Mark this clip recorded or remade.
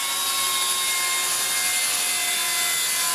recorded